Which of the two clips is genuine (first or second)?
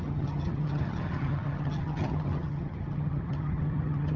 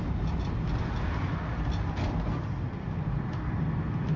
second